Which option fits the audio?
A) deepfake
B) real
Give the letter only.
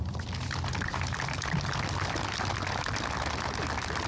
B